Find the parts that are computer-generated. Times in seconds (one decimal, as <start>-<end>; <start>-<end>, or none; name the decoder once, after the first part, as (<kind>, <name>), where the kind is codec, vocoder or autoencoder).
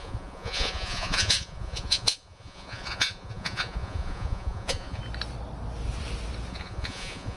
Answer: 0.0-5.0 (vocoder, Vocos); 6.5-7.4